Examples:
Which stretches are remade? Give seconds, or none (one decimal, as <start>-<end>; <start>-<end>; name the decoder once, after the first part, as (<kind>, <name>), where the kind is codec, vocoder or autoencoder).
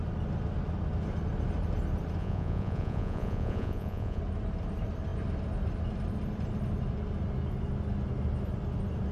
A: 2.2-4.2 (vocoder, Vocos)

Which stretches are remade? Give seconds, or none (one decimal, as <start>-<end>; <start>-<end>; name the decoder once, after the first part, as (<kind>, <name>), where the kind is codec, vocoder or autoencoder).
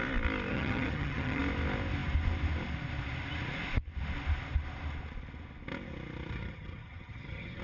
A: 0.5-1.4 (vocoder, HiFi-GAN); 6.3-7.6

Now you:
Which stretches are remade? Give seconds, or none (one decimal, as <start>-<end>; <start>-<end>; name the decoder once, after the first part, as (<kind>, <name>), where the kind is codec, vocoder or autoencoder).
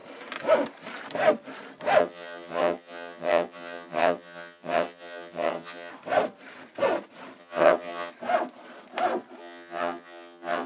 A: 2.0-5.9 (vocoder, HiFi-GAN); 7.4-8.1; 9.4-10.7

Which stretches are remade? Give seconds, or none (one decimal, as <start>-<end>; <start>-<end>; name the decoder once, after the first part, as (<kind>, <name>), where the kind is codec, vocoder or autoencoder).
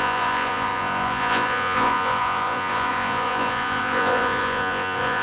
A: 0.0-5.2 (vocoder, Vocos)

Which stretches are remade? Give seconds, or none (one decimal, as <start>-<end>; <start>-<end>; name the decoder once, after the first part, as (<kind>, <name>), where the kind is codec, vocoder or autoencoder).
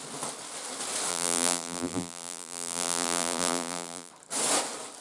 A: 1.1-4.1 (vocoder, BigVGAN v2)